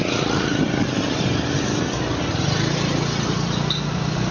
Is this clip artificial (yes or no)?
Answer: no